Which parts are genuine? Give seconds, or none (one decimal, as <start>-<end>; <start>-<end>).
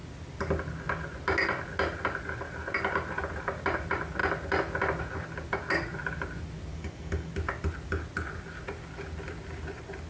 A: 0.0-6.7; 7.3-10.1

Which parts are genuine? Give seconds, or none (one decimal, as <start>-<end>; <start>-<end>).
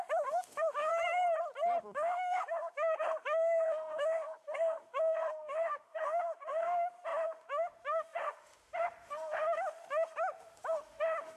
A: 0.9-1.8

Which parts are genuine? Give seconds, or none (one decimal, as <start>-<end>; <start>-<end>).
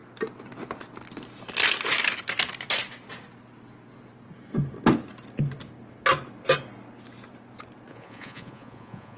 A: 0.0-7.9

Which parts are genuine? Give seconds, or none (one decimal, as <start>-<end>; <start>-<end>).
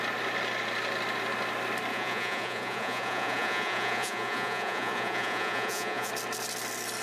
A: 0.0-1.9; 6.1-7.0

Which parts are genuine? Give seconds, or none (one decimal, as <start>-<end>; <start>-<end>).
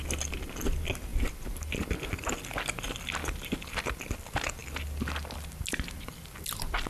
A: 0.0-6.9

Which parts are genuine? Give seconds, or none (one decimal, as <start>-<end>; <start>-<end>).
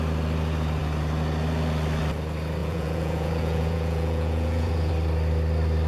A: 0.0-2.6; 4.9-5.9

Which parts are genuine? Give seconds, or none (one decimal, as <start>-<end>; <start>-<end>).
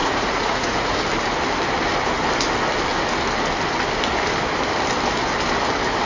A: 1.0-6.1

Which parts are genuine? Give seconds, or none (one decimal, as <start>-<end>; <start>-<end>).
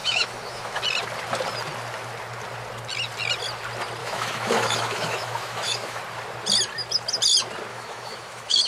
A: 0.8-4.0; 6.0-7.7